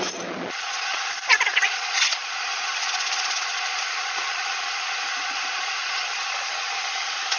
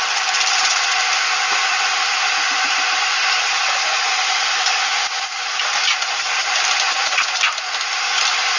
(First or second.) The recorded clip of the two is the second